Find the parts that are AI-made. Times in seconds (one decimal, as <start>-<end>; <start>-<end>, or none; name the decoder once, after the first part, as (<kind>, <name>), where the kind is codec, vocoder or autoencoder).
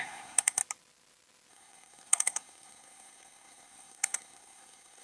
0.0-0.6 (codec, SNAC); 1.5-5.0